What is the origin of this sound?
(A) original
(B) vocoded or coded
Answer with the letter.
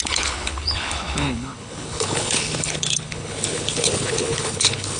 B